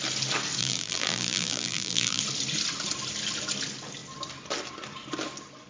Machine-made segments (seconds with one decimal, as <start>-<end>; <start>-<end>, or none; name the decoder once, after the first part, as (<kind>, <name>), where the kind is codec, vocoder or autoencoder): 0.6-2.2 (vocoder, BigVGAN v2)